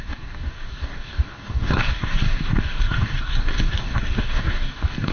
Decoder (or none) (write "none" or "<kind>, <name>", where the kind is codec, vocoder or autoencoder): codec, DAC